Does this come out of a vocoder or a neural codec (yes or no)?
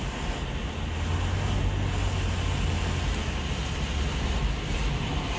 no